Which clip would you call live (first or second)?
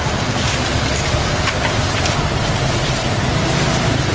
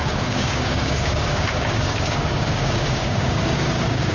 first